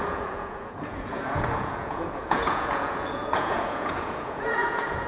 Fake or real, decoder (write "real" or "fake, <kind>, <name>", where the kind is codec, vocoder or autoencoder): fake, vocoder, Vocos